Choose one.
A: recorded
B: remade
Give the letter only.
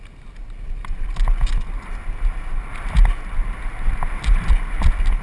A